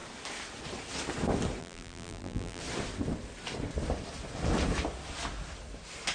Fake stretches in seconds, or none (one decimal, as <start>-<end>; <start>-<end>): 1.6-2.6